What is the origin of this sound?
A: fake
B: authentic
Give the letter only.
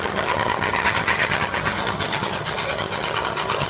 A